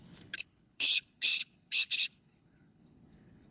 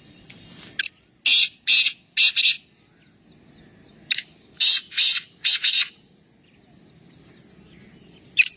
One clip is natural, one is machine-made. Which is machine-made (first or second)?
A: first